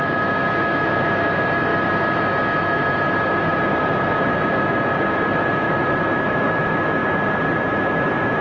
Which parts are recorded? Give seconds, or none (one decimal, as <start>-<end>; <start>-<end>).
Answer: 1.7-6.1; 7.0-7.6